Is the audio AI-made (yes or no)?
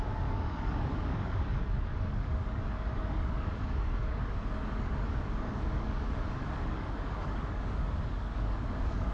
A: yes